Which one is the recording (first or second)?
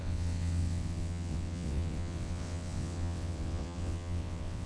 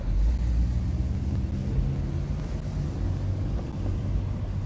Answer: second